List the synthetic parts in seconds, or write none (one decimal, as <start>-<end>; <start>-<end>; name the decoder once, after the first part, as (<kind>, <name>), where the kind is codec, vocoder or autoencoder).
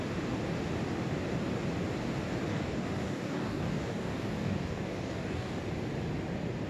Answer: 2.5-5.6 (codec, DAC)